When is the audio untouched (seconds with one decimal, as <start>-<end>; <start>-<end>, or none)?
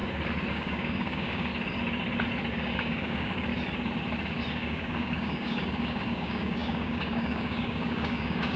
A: 0.0-0.5; 1.5-2.5; 3.5-4.5